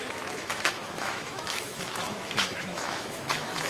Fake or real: fake